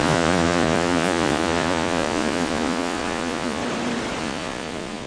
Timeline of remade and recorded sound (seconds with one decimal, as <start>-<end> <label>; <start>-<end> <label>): 0.0-3.6 remade; 3.6-4.2 recorded; 4.2-5.1 remade